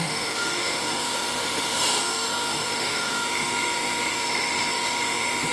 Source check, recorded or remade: remade